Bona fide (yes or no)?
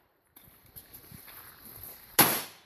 no